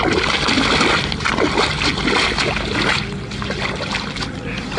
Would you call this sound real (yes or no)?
yes